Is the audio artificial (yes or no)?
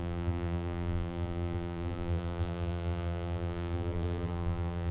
yes